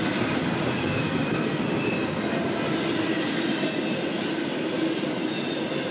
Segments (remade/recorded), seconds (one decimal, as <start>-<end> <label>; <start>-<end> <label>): 0.0-0.8 recorded; 0.8-1.6 remade; 1.6-5.9 recorded